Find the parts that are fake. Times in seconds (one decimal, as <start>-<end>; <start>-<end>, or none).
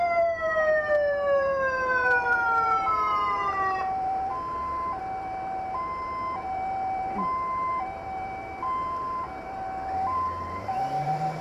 0.0-4.3; 5.0-11.4